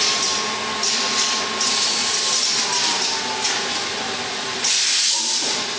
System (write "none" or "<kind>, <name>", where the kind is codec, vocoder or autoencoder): none